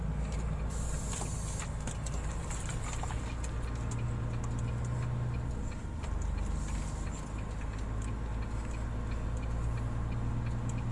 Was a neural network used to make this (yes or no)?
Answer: no